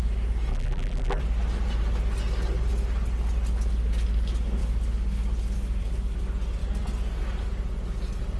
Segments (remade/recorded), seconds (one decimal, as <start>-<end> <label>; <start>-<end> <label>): 0.0-0.5 recorded; 0.5-1.2 remade; 1.2-8.4 recorded